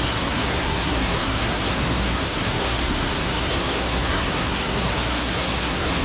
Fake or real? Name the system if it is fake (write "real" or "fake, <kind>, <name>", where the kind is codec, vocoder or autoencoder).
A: fake, codec, SNAC